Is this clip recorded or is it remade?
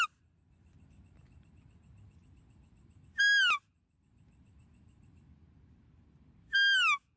recorded